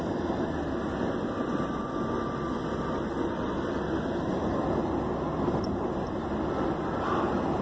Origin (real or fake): real